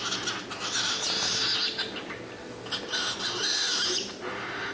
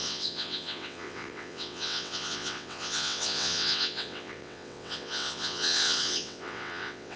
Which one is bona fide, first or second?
first